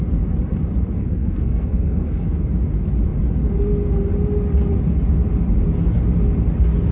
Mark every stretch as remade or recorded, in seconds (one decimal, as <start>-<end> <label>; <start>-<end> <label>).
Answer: 0.0-1.0 recorded; 1.0-2.4 remade; 2.4-6.9 recorded

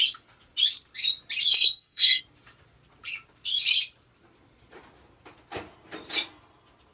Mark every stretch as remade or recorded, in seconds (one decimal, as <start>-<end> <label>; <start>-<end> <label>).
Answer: 0.0-1.5 recorded; 1.5-2.2 remade; 2.2-6.9 recorded

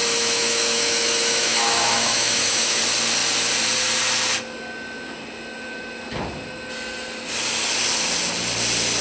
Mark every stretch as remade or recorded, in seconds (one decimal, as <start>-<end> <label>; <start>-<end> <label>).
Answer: 0.0-2.8 remade; 2.8-9.0 recorded

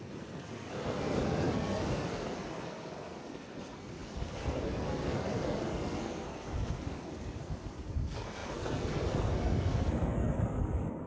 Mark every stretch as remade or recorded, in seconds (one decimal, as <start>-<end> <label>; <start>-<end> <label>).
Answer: 0.0-11.1 remade

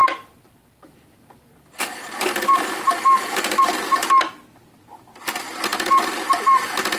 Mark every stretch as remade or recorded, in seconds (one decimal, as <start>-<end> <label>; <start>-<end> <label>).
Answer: 0.0-3.6 remade; 3.6-7.0 recorded

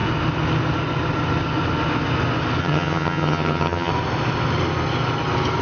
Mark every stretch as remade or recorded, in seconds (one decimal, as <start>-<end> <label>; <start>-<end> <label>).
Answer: 0.0-2.6 recorded; 2.6-3.9 remade; 3.9-5.6 recorded